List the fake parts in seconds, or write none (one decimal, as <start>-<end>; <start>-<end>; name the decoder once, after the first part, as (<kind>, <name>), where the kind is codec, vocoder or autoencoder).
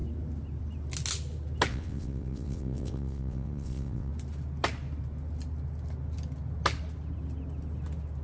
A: 1.7-4.1 (vocoder, WaveNeXt)